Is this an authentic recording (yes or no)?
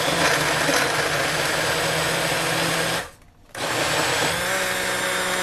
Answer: yes